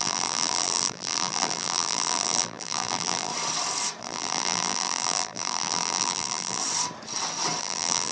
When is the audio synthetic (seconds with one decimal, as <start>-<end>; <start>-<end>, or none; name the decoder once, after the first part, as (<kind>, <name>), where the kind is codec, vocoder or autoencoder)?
0.0-3.3 (vocoder, BigVGAN v2); 4.0-6.6; 7.6-8.1